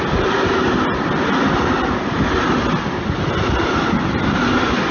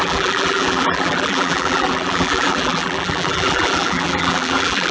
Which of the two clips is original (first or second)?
first